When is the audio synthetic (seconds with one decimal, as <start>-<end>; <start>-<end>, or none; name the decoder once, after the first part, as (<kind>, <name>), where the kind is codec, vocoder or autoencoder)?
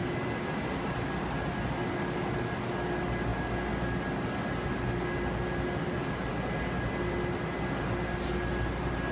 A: none